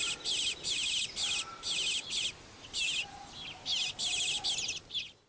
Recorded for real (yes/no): yes